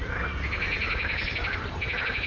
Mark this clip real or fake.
real